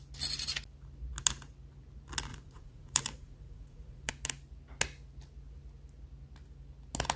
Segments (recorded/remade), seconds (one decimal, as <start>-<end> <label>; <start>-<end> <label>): 0.0-2.3 recorded; 2.3-4.1 remade; 4.1-7.2 recorded